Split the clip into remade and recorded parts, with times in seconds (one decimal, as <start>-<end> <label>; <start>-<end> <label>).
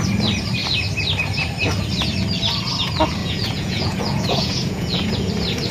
0.0-3.2 recorded; 3.2-5.3 remade; 5.3-5.7 recorded